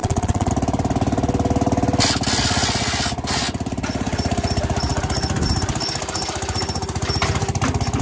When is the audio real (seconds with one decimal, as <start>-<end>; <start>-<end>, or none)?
0.5-8.0

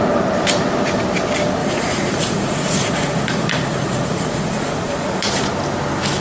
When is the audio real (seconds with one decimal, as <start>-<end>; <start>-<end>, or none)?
0.0-1.6; 5.3-6.2

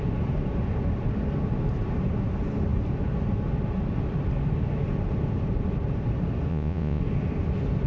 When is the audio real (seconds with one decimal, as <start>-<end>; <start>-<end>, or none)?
0.0-6.5; 7.0-7.9

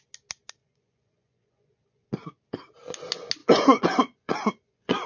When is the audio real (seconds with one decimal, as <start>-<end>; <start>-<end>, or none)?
0.0-0.6; 2.4-3.4

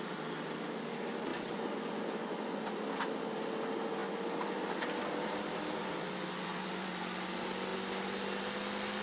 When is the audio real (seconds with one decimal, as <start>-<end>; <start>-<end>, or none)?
0.0-1.3; 2.6-5.8; 6.9-9.0

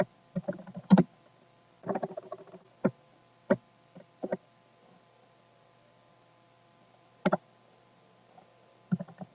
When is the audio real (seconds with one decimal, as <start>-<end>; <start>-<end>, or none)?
0.0-9.3

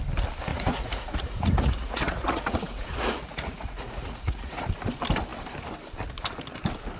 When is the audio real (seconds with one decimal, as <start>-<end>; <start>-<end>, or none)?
0.0-0.5; 4.7-7.0

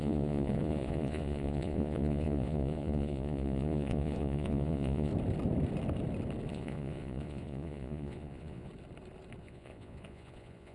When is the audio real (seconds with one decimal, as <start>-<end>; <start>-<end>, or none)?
5.1-6.5; 8.7-9.4